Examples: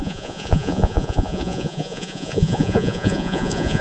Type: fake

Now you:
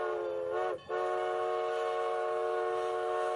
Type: real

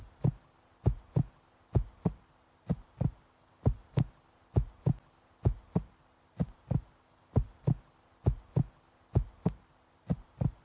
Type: real